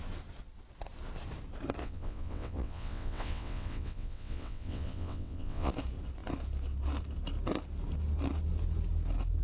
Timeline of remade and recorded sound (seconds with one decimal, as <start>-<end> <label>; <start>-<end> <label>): 0.0-1.8 recorded; 1.8-5.7 remade; 5.7-9.4 recorded